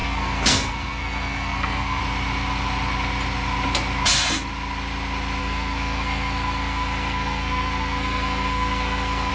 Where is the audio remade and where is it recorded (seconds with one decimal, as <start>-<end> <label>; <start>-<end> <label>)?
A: 0.0-2.0 remade; 2.0-5.4 recorded; 5.4-9.3 remade